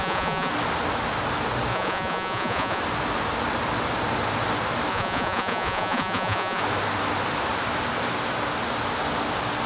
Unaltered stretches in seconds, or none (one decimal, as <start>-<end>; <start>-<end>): 0.5-1.7; 2.8-4.9; 6.6-9.7